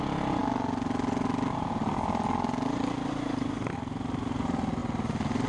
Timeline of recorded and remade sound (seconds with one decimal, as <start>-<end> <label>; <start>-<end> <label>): 0.0-5.5 recorded